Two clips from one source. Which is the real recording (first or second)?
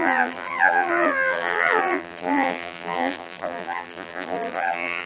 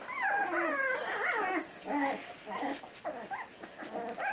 second